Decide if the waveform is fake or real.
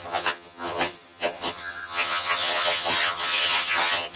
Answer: fake